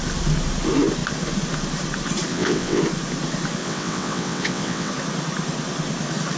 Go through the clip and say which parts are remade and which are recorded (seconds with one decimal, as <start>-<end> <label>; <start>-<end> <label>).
0.0-2.3 recorded; 2.3-2.8 remade; 2.8-3.6 recorded; 3.6-4.9 remade; 4.9-6.4 recorded